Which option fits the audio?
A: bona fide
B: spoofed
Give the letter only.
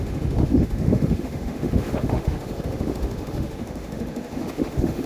B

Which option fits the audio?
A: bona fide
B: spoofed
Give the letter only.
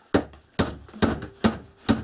A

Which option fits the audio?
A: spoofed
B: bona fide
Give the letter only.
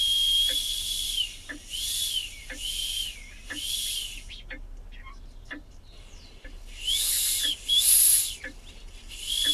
B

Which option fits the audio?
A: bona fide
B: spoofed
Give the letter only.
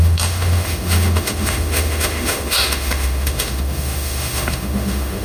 B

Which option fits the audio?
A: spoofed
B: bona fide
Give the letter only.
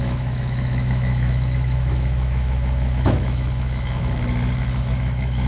A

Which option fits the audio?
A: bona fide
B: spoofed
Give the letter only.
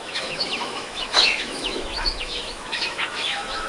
B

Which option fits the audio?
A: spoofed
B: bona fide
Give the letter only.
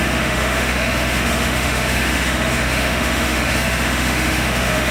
A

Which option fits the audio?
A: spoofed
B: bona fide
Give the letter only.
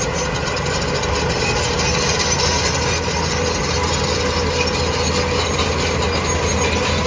B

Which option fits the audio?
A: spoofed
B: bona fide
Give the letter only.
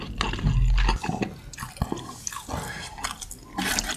B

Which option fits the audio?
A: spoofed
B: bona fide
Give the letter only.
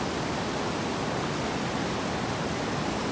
B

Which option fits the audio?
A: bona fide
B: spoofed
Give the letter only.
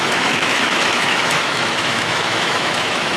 B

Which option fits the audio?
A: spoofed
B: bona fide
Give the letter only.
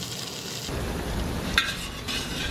B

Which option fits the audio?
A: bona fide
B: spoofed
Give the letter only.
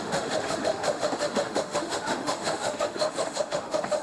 B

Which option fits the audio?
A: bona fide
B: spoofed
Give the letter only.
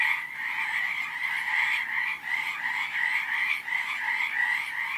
A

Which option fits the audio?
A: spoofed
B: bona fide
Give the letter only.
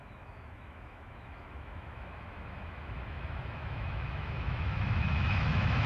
A